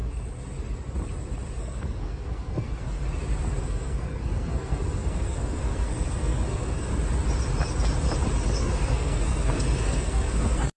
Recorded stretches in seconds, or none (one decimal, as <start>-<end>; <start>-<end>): 0.0-1.6; 3.0-3.6; 6.9-8.6